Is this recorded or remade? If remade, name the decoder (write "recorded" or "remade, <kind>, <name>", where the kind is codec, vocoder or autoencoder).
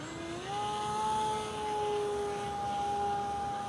recorded